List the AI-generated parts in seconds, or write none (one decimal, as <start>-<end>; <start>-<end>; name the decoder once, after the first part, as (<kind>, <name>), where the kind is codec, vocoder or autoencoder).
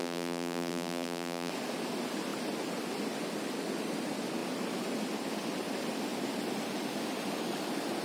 0.0-1.5 (vocoder, BigVGAN v2)